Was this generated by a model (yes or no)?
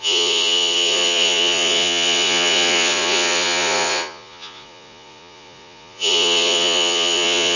yes